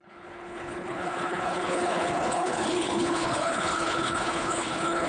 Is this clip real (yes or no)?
no